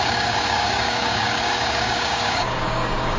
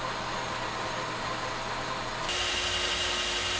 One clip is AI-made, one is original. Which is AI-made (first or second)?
first